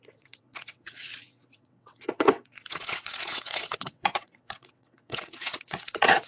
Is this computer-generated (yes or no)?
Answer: yes